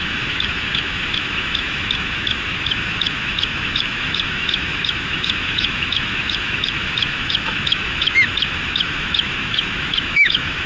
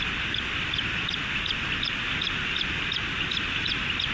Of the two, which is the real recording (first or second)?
second